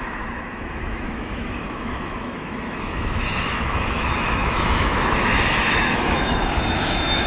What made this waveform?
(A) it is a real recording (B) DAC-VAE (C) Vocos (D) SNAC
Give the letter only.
B